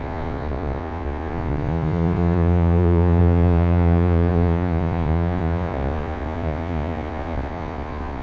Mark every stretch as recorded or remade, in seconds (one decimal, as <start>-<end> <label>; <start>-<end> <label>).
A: 0.0-8.2 remade